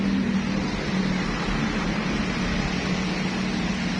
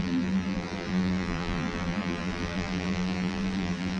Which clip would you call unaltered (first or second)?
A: first